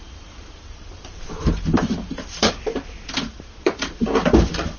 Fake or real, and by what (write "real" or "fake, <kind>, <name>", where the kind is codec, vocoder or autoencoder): fake, vocoder, BigVGAN v2